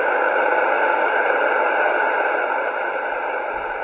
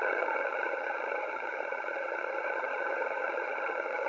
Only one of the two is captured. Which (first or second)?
first